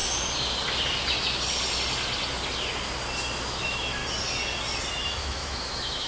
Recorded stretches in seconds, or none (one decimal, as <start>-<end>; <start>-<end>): 0.0-3.4; 4.0-4.9